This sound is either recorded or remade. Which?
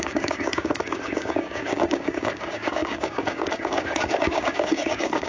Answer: remade